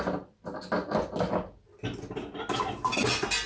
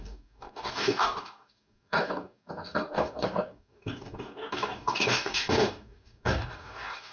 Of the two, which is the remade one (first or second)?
second